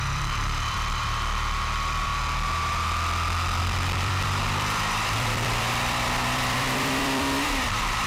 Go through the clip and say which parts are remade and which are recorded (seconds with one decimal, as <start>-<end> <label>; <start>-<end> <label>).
0.0-2.1 remade; 2.1-3.6 recorded; 3.6-8.1 remade